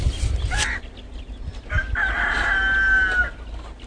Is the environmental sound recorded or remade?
recorded